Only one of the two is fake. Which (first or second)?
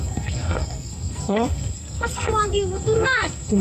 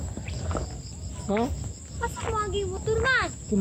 first